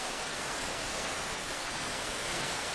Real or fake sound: fake